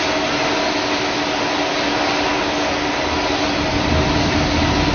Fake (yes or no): no